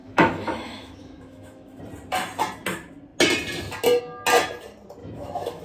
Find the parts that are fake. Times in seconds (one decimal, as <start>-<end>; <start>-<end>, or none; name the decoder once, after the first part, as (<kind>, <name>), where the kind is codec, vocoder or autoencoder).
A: 0.0-1.8 (autoencoder, DAC-VAE); 5.0-5.6